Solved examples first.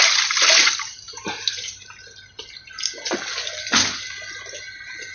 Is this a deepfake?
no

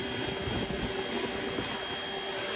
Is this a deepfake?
no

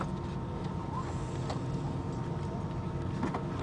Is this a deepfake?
no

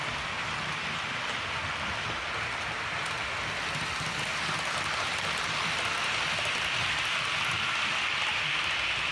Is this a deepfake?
no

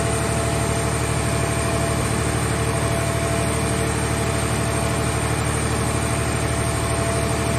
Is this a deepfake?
no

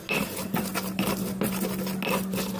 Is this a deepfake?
no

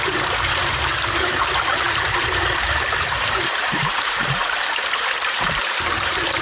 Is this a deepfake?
yes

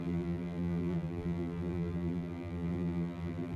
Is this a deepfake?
yes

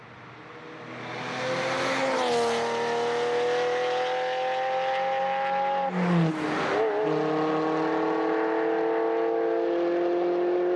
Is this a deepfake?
no